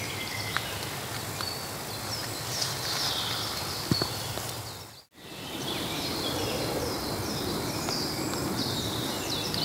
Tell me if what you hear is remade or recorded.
recorded